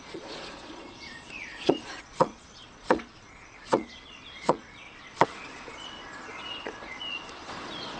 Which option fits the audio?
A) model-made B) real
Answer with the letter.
A